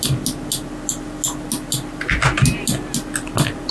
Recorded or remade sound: recorded